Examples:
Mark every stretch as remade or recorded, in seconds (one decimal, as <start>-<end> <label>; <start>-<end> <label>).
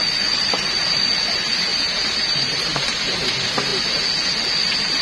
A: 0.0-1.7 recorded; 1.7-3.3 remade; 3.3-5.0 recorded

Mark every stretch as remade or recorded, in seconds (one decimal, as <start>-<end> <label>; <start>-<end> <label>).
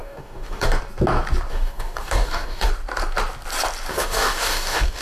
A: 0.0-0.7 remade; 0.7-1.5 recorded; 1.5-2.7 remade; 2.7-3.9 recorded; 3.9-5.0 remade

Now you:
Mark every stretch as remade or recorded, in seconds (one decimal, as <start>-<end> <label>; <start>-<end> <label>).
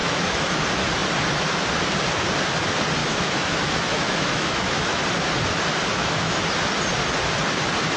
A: 0.0-0.6 remade; 0.6-3.0 recorded; 3.0-5.0 remade; 5.0-5.9 recorded; 5.9-6.4 remade; 6.4-8.0 recorded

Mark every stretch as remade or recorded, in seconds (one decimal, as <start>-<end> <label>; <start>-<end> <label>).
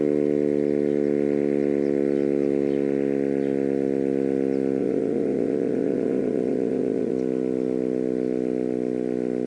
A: 0.0-4.8 recorded; 4.8-7.1 remade; 7.1-9.5 recorded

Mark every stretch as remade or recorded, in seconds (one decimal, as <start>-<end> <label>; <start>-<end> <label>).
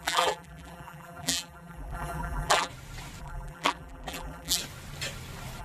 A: 0.0-2.7 remade; 2.7-3.2 recorded; 3.2-4.6 remade; 4.6-5.6 recorded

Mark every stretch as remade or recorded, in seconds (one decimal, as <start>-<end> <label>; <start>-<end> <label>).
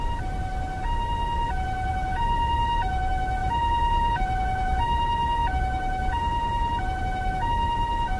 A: 0.0-1.9 recorded; 1.9-2.5 remade; 2.5-3.4 recorded; 3.4-4.8 remade; 4.8-8.2 recorded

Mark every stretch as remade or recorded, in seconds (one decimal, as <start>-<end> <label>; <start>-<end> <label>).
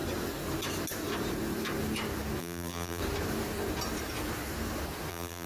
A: 0.0-2.4 recorded; 2.4-3.0 remade; 3.0-5.1 recorded; 5.1-5.5 remade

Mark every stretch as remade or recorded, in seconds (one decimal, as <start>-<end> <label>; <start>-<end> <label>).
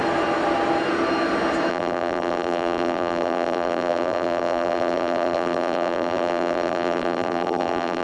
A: 0.0-1.7 recorded; 1.7-8.0 remade